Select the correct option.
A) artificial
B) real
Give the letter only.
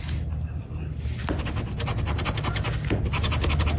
B